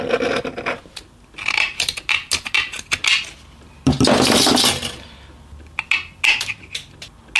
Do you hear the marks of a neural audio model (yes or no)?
no